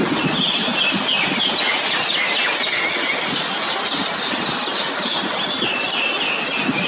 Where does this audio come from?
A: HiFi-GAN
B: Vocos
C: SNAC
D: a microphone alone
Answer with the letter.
D